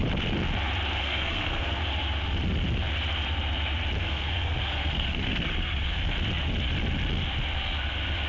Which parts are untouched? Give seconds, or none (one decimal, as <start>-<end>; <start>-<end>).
0.0-1.0; 1.8-4.0; 6.0-8.3